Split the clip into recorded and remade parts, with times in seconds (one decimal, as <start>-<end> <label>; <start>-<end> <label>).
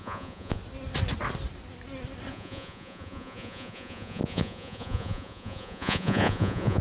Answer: 0.0-0.6 remade; 0.6-2.3 recorded; 2.3-6.8 remade